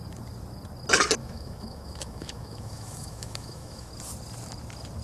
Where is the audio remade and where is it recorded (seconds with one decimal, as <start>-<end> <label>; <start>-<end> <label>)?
0.0-1.2 recorded; 1.2-3.9 remade; 3.9-5.0 recorded